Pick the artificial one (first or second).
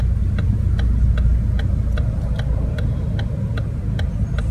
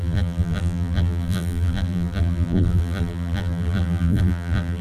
second